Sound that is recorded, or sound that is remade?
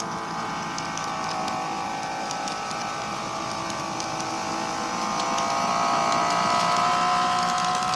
recorded